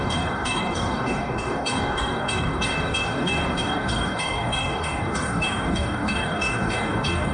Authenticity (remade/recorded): remade